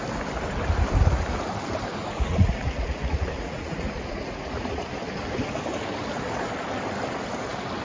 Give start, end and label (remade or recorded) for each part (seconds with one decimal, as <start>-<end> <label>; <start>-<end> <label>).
0.0-1.9 recorded; 1.9-4.9 remade; 4.9-7.8 recorded